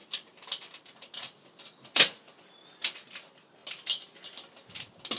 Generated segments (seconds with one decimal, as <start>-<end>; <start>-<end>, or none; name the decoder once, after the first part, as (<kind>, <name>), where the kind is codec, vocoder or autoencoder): none